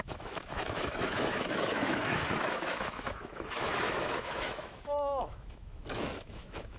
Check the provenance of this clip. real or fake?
fake